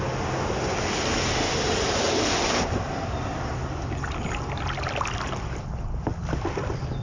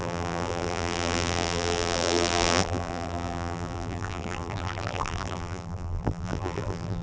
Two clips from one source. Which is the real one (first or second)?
first